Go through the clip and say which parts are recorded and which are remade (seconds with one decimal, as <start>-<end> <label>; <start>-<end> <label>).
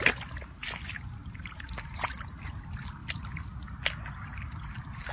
0.0-1.2 recorded; 1.2-2.0 remade; 2.0-5.1 recorded